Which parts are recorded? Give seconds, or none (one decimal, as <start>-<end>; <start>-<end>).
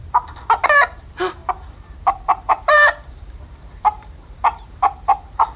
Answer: 0.0-1.4; 4.8-5.6